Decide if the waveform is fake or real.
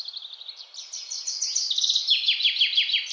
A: real